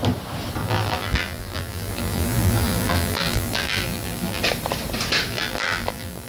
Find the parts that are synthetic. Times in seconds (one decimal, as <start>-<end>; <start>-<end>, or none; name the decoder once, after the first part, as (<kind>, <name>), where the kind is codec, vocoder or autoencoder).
0.6-4.4 (vocoder, BigVGAN v2); 5.3-6.3